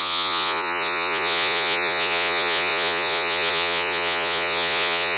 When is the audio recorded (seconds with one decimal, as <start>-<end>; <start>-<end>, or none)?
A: none